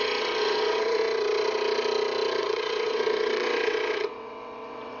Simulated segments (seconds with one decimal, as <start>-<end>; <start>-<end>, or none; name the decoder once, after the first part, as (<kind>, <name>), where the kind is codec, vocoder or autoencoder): 0.0-1.0 (vocoder, WaveNeXt); 2.4-5.0